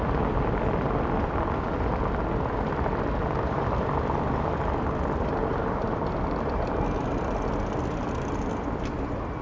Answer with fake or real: real